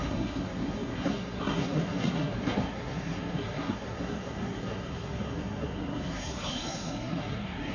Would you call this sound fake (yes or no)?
yes